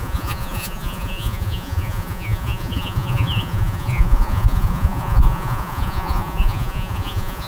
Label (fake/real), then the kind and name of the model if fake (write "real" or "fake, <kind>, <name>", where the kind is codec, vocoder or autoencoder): fake, vocoder, Vocos